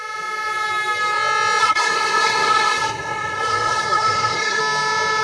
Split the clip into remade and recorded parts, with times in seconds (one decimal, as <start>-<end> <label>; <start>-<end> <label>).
0.0-1.6 recorded; 1.6-4.6 remade; 4.6-5.2 recorded